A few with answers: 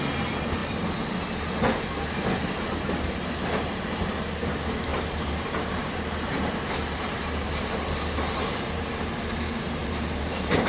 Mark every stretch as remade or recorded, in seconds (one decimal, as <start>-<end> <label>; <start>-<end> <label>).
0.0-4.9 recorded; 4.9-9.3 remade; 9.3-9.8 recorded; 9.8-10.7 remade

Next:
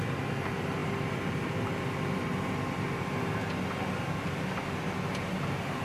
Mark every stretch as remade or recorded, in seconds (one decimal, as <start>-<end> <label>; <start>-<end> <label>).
0.0-5.8 recorded

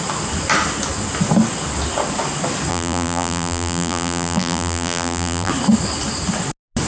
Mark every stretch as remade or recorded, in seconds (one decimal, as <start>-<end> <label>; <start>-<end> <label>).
0.0-2.7 recorded; 2.7-5.5 remade; 5.5-6.9 recorded

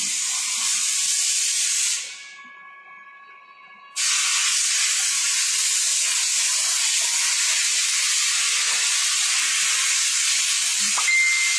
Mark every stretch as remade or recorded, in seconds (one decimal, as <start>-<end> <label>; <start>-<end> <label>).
0.0-0.7 recorded; 0.7-1.5 remade; 1.5-11.6 recorded

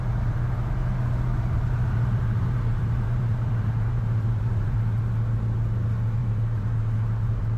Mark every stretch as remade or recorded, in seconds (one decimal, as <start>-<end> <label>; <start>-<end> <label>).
0.0-1.3 recorded; 1.3-5.0 remade; 5.0-6.2 recorded; 6.2-7.6 remade

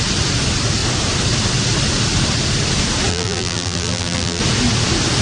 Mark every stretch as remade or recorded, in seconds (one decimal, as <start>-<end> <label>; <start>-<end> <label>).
0.0-3.1 recorded; 3.1-4.4 remade; 4.4-5.2 recorded